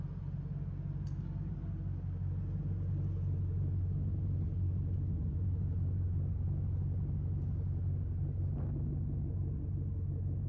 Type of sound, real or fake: real